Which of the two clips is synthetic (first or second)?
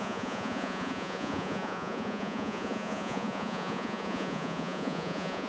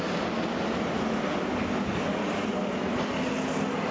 first